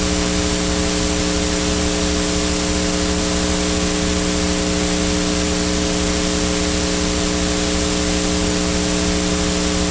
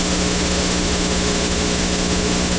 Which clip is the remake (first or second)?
second